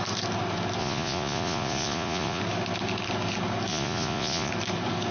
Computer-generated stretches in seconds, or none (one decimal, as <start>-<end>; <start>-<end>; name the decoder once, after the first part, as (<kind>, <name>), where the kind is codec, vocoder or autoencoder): 0.8-2.4 (vocoder, Vocos); 3.7-4.5